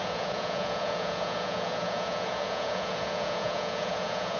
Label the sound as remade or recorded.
remade